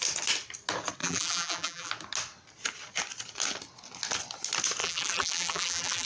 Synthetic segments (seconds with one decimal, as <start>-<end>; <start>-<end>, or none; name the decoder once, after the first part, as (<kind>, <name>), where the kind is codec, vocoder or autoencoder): 1.0-1.9 (vocoder, BigVGAN v2); 4.8-6.1